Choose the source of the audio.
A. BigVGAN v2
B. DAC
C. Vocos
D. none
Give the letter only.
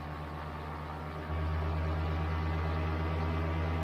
D